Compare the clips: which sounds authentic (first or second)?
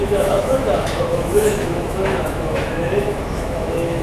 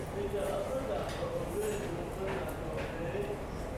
second